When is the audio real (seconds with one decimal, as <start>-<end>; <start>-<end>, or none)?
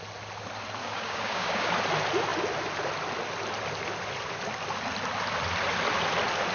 0.0-0.8; 1.7-6.5